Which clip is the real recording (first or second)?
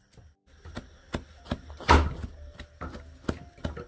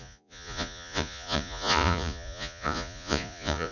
first